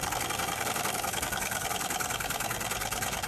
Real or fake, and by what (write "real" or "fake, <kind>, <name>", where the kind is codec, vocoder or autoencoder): fake, codec, SNAC